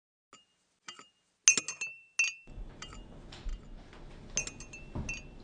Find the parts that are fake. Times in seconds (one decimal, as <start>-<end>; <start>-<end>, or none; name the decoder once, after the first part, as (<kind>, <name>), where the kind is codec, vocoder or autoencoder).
none